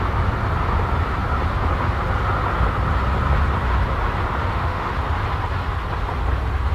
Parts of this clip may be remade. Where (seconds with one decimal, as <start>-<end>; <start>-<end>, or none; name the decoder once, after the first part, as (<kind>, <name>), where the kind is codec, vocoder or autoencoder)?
4.4-4.9 (autoencoder, DAC-VAE)